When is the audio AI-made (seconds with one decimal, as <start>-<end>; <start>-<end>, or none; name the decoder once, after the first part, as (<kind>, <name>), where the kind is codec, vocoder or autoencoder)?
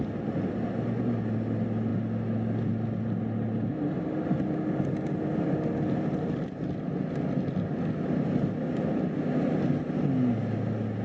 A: none